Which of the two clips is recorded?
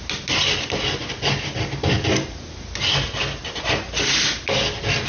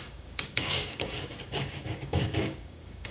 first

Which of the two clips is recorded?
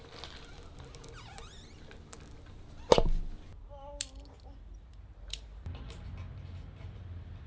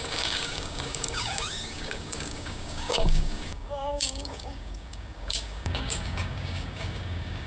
first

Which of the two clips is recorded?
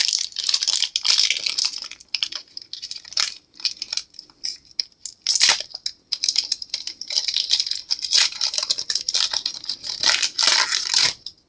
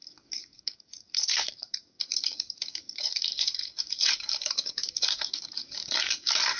first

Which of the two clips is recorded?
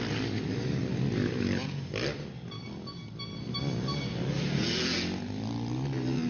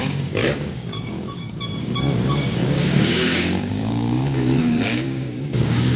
first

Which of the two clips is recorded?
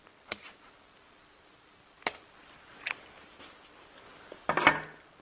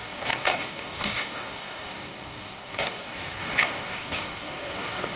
first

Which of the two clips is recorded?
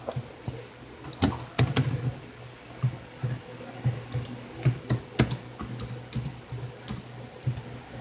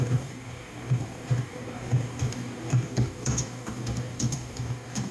first